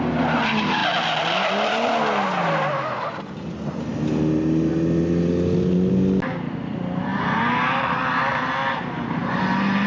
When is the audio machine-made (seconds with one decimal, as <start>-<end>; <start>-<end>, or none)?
none